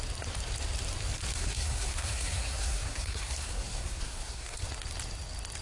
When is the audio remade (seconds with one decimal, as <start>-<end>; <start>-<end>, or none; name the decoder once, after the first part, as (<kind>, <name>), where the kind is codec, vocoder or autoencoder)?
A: 1.3-4.7 (codec, SNAC)